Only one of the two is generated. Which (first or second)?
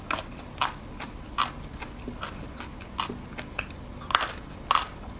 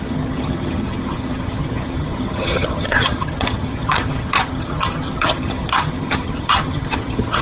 second